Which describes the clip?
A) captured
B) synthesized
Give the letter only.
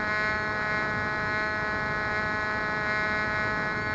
A